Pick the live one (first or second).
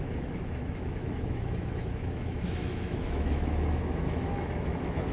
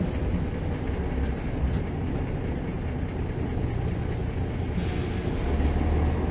second